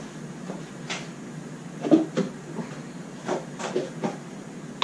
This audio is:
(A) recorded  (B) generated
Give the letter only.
A